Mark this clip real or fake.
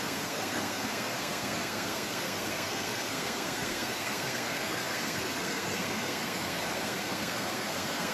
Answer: fake